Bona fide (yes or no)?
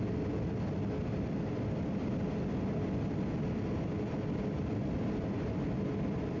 yes